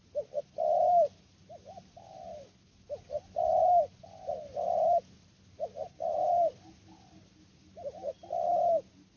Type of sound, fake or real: real